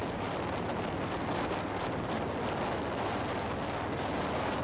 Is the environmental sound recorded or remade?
recorded